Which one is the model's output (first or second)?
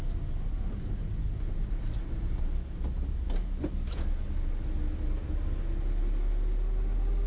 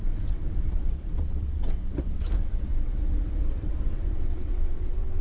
second